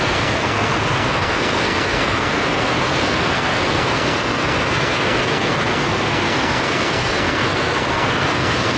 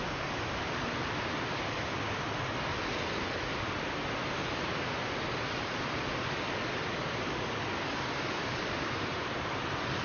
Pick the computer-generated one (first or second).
first